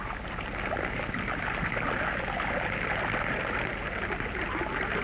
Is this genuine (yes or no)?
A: yes